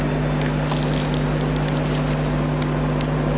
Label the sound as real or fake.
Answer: real